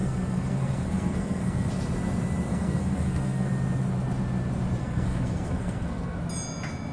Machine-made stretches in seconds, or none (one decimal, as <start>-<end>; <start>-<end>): 0.0-1.7; 2.5-3.5; 4.8-6.2